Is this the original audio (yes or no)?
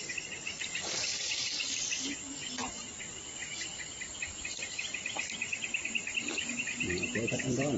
no